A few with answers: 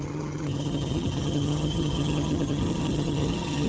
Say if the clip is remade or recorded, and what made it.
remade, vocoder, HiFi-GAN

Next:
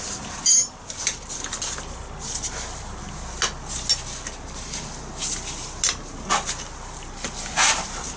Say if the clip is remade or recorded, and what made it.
recorded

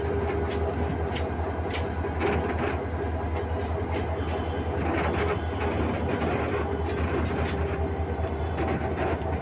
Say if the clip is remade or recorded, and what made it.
recorded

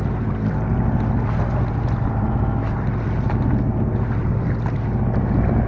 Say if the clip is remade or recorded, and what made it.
recorded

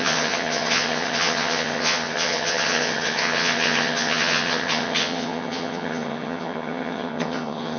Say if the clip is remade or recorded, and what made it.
remade, vocoder, HiFi-GAN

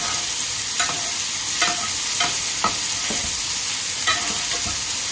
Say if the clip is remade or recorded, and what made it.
recorded